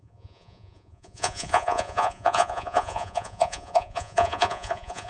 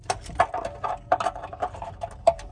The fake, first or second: first